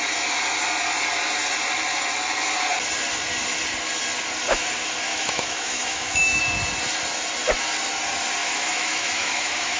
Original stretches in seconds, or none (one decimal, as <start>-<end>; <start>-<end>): 0.0-5.1; 6.4-8.4